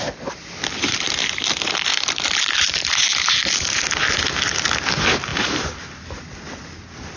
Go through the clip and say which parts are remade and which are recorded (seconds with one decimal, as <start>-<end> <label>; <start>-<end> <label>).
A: 0.0-7.2 recorded